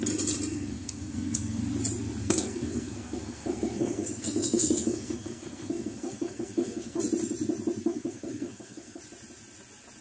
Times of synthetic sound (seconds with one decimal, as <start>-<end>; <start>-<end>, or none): 0.5-1.6; 2.2-7.0; 7.8-9.0